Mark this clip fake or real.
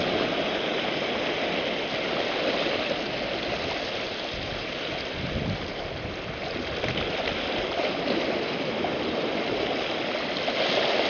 real